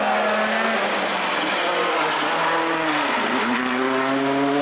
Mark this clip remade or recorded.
recorded